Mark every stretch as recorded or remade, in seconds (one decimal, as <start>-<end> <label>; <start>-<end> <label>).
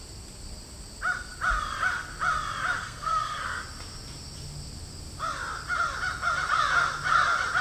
0.0-2.8 recorded; 2.8-3.6 remade; 3.6-7.6 recorded